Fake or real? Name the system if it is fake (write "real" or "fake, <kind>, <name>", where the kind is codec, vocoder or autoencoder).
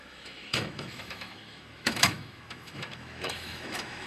fake, autoencoder, DAC-VAE